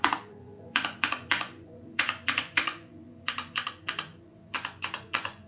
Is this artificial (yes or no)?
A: yes